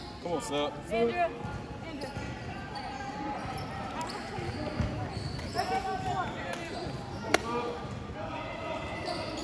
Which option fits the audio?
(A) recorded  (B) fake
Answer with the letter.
A